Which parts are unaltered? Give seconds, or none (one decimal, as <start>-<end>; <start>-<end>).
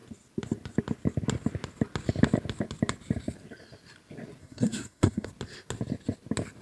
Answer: 0.0-4.4; 5.3-6.6